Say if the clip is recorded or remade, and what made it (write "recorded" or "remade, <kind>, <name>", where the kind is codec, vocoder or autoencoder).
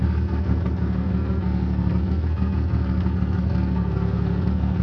remade, codec, SNAC